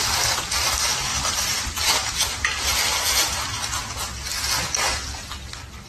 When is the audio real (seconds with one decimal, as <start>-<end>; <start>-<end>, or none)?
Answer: 0.0-1.1; 3.4-5.9